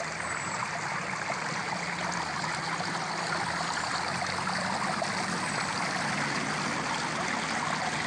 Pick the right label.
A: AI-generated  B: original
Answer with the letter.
B